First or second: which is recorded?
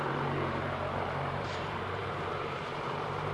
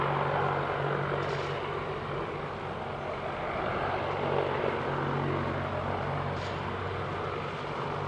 second